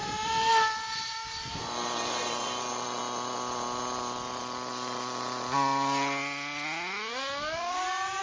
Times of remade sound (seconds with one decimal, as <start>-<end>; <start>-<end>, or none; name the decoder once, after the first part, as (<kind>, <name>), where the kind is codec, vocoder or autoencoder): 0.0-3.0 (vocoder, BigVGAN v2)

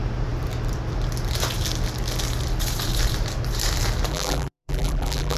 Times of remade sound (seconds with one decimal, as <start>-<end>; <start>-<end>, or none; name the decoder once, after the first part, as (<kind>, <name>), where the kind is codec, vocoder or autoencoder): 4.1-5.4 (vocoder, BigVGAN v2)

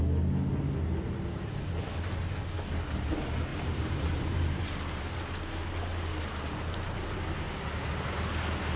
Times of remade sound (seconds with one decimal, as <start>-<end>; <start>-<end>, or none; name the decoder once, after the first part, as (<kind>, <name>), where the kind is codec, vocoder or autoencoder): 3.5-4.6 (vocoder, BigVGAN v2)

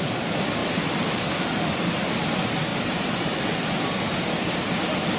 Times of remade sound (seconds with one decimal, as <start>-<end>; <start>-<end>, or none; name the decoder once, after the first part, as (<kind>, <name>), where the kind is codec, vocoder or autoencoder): 0.6-1.7 (vocoder, BigVGAN v2); 2.7-3.4